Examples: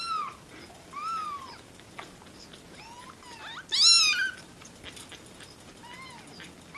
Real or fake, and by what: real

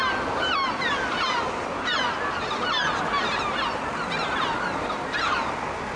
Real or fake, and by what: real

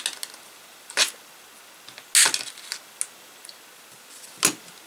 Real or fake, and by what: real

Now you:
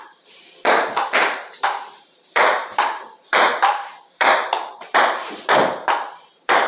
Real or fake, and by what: fake, vocoder, BigVGAN v2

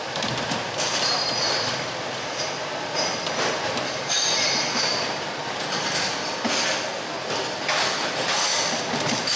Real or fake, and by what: fake, vocoder, BigVGAN v2